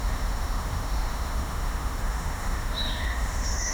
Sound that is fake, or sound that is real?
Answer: fake